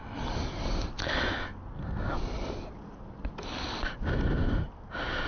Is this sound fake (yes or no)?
no